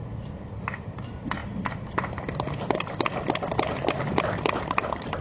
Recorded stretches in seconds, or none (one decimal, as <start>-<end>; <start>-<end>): 0.0-5.2

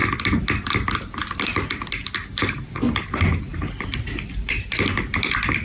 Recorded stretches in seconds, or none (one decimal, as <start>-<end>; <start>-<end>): none